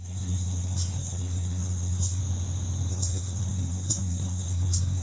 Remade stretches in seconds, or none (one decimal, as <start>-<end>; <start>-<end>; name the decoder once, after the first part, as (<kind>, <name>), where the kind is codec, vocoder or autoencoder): 0.0-2.2 (codec, SNAC); 2.9-5.0